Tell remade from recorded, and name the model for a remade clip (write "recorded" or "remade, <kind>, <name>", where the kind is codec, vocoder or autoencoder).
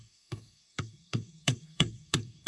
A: remade, codec, SNAC